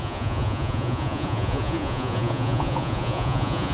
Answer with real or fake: fake